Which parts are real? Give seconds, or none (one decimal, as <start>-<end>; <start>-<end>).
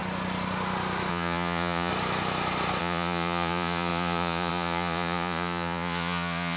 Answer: 0.0-1.1; 1.9-2.8